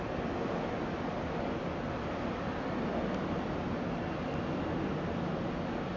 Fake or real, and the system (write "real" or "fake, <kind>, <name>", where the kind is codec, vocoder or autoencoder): real